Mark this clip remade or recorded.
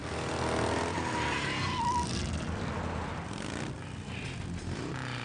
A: recorded